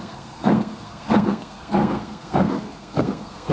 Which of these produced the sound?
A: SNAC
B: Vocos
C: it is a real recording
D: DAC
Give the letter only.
A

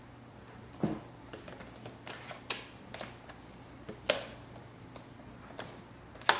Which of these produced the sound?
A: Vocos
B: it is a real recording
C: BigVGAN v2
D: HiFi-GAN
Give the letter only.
B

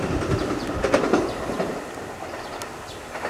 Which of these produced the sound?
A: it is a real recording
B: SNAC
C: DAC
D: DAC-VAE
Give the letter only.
A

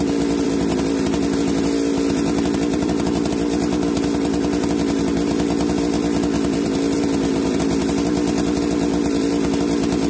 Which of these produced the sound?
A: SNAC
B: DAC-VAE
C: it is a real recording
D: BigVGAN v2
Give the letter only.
D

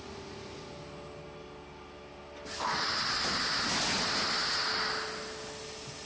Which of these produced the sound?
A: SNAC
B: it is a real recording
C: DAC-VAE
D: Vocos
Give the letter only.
B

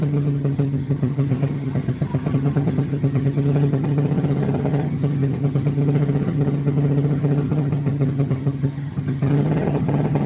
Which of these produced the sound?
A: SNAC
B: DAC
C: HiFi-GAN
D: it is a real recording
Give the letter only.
C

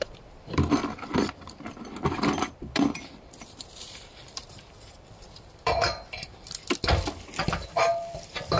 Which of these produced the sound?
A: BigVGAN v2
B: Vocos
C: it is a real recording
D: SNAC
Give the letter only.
A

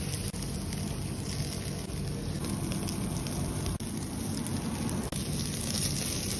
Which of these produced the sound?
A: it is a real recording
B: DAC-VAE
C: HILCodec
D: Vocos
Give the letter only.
A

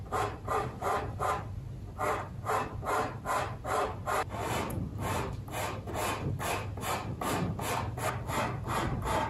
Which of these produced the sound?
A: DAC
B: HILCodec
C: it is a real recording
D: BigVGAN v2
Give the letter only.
D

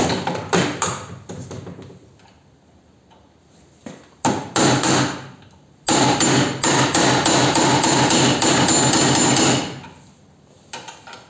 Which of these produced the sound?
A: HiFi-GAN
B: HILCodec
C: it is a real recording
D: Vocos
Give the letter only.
C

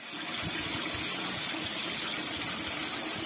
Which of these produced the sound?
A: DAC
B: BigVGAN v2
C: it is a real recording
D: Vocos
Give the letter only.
C